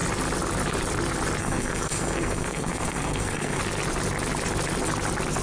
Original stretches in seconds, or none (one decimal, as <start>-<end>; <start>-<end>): 0.0-1.4; 3.6-5.4

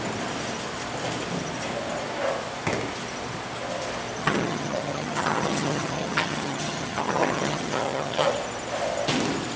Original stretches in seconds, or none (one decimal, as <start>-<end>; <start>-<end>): 0.0-4.2; 8.3-9.6

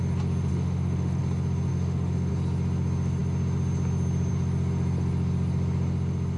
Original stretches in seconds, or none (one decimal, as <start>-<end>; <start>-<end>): 0.0-0.5; 1.2-1.7; 2.3-6.4

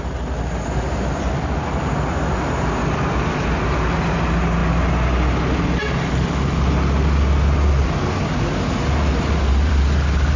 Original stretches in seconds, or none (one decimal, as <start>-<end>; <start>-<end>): 0.0-10.4

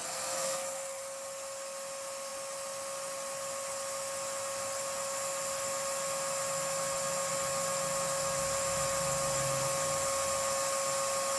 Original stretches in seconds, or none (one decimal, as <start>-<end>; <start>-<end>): 1.0-11.4

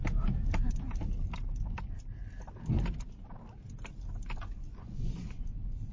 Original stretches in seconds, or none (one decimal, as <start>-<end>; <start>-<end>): 0.0-4.7; 5.5-5.9

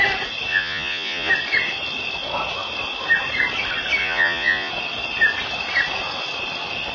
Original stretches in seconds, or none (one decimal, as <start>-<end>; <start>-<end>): 0.0-0.5; 1.3-4.0; 4.7-6.9